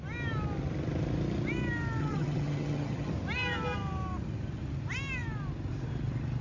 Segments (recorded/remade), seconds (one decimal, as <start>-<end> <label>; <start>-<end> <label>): 0.0-2.0 recorded; 2.0-3.1 remade; 3.1-6.4 recorded